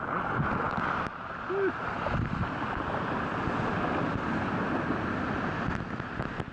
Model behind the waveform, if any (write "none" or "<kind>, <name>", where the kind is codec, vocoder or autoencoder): none